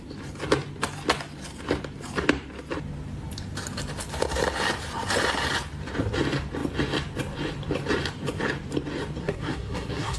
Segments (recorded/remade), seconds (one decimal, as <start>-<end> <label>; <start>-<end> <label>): 0.0-9.2 recorded; 9.2-10.2 remade

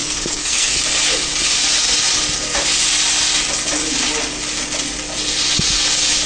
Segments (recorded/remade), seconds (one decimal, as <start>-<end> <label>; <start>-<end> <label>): 0.0-0.8 remade; 0.8-6.3 recorded

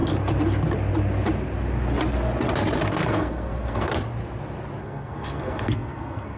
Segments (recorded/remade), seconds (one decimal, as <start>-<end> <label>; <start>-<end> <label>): 0.0-3.0 recorded; 3.0-3.9 remade; 3.9-4.8 recorded; 4.8-6.4 remade

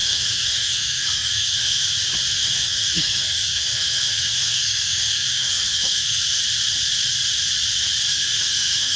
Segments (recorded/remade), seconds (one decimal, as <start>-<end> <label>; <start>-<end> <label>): 0.0-1.9 remade; 1.9-2.4 recorded; 2.4-6.4 remade; 6.4-8.1 recorded; 8.1-9.0 remade

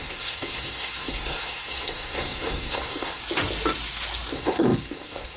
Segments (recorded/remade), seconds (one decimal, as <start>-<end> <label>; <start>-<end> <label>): 0.0-3.2 remade; 3.2-4.3 recorded; 4.3-5.4 remade